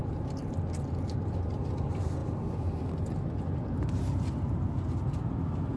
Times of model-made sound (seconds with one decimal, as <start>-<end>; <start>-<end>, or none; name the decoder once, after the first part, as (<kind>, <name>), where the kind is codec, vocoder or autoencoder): none